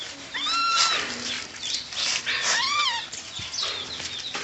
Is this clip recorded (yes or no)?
yes